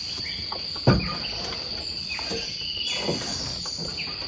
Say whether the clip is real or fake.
real